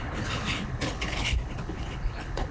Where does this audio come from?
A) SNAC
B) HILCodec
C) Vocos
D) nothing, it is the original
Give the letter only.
B